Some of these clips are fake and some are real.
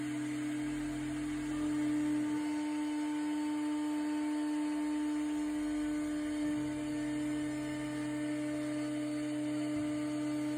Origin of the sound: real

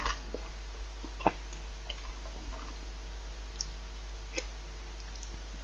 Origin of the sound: real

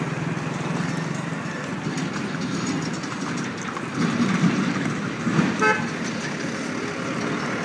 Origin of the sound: real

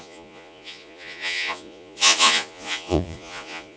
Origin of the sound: fake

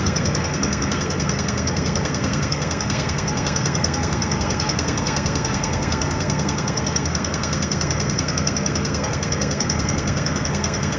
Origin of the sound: fake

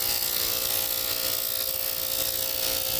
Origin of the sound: real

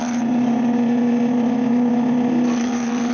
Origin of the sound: real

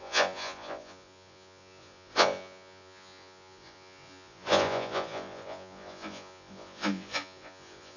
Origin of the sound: fake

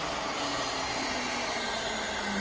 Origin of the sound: real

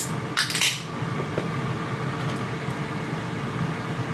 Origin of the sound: real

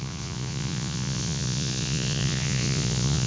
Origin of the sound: fake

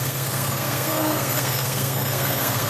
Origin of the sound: fake